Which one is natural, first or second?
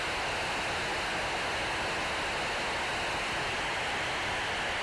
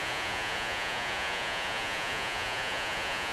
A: first